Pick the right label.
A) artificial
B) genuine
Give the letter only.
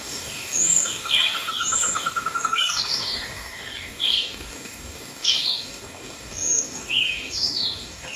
A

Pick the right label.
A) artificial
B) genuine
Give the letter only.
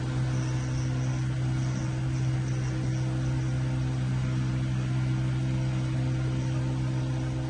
B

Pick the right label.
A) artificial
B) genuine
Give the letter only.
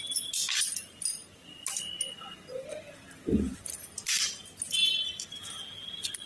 B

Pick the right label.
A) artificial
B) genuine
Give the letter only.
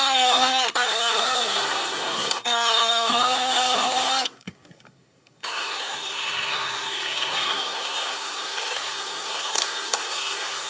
A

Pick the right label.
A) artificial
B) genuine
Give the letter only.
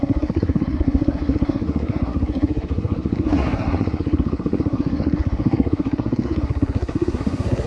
A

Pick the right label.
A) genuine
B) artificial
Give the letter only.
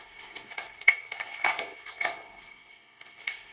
B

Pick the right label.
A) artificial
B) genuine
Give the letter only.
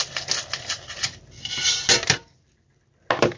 B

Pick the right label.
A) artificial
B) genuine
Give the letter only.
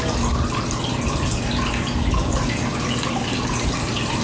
B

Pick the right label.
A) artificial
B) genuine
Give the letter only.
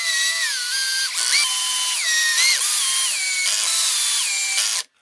B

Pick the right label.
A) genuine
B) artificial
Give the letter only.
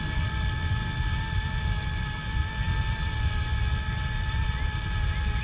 A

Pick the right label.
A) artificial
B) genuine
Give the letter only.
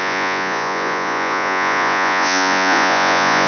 A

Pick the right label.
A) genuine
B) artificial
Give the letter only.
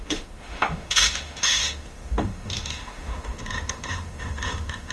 B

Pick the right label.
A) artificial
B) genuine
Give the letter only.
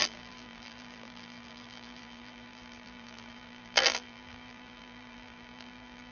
A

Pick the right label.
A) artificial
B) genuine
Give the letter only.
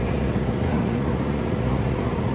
A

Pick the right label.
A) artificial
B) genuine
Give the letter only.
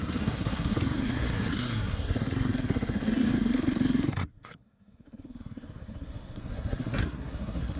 A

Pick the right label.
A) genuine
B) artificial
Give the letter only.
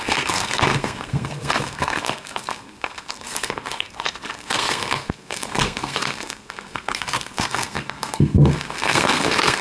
B